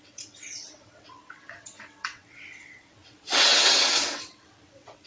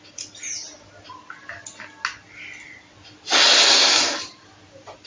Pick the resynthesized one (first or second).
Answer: first